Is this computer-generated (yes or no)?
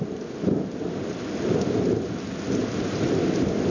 no